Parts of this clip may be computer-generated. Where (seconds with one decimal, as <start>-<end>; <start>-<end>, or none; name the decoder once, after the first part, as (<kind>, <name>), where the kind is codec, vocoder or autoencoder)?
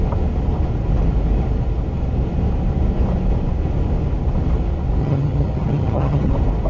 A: 5.0-6.3 (vocoder, HiFi-GAN)